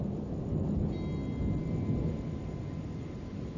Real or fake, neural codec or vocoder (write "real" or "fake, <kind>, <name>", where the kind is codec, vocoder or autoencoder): real